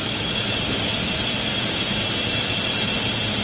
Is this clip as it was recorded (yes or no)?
yes